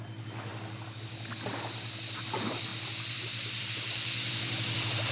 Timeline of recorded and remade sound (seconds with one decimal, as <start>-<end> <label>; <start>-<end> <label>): 0.0-5.1 recorded